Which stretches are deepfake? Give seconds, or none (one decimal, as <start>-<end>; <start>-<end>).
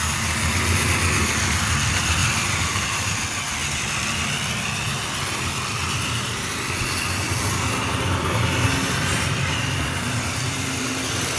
2.2-3.2